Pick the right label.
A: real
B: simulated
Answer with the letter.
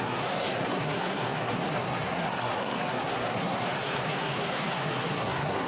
B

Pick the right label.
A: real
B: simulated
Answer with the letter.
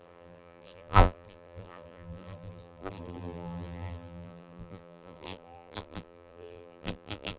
B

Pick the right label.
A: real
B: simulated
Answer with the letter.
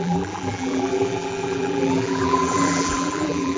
B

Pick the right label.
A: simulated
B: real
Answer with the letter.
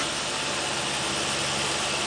B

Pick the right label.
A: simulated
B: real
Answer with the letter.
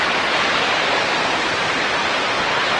B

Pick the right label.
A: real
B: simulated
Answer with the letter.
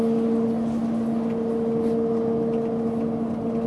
A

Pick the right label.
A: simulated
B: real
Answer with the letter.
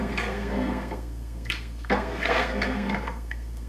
A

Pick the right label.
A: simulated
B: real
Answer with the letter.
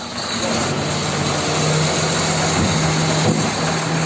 B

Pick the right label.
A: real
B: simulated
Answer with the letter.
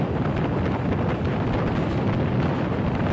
A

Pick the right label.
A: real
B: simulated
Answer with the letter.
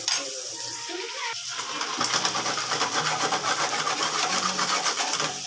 A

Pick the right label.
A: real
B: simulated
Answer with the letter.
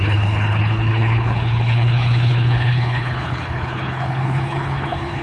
B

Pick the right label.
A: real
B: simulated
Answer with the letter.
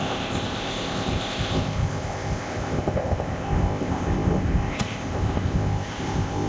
B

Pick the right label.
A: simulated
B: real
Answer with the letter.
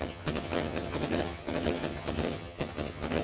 A